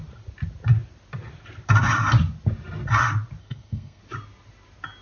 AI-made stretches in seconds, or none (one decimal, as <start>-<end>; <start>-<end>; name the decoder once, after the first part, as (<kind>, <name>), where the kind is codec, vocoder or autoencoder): 3.4-4.0 (codec, SNAC)